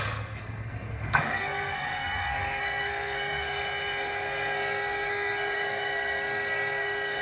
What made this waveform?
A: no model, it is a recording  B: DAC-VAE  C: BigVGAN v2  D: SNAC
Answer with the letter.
D